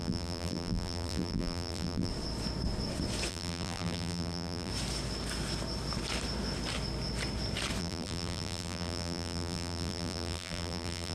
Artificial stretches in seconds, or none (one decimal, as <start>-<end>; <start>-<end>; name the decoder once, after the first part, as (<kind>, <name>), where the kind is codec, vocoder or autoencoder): 0.0-2.1 (vocoder, BigVGAN v2); 3.3-4.7; 7.8-11.1